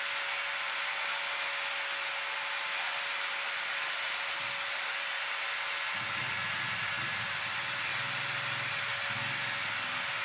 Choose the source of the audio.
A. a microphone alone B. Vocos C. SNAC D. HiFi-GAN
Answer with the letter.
A